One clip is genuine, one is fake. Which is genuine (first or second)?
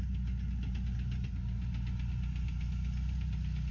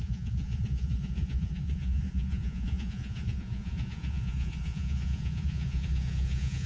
first